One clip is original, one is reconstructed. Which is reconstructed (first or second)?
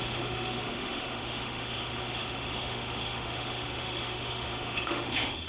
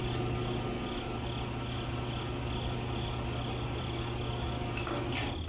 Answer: first